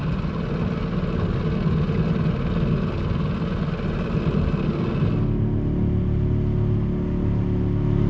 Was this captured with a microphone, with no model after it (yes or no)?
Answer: yes